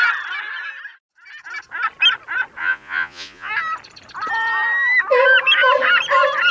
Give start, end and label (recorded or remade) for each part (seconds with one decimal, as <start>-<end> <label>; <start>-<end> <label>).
0.0-2.6 recorded; 2.6-3.5 remade; 3.5-6.5 recorded